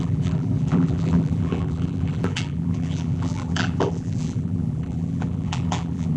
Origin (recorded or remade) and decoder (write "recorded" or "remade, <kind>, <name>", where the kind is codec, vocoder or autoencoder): remade, vocoder, BigVGAN v2